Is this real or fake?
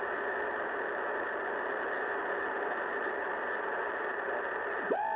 real